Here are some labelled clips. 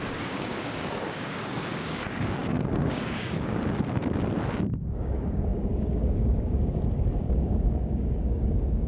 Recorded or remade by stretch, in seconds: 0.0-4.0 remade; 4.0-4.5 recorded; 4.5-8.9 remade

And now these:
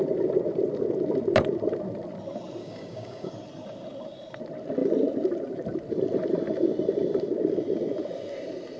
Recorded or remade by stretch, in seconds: 0.0-2.6 recorded; 2.6-3.3 remade; 3.3-8.8 recorded

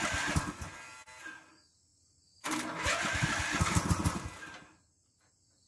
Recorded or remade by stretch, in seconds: 0.0-5.7 recorded

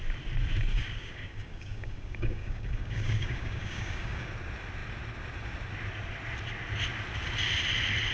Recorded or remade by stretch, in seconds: 0.0-0.7 recorded; 0.7-4.3 remade; 4.3-8.1 recorded

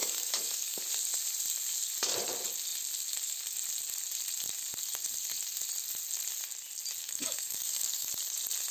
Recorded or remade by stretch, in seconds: 0.0-0.8 remade; 0.8-7.0 recorded; 7.0-8.1 remade; 8.1-8.7 recorded